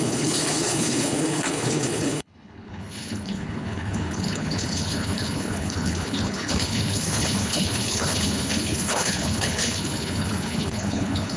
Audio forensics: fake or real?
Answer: fake